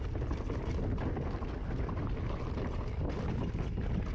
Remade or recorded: recorded